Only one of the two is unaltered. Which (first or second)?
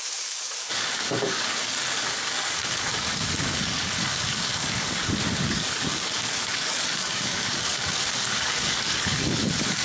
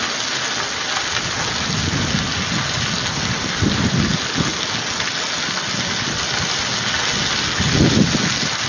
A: second